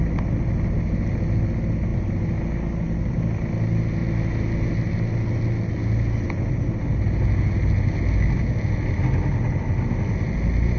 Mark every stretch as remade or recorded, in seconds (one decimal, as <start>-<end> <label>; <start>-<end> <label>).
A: 0.0-10.8 recorded